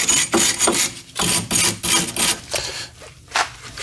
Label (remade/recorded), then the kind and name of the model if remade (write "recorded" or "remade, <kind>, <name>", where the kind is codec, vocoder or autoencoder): recorded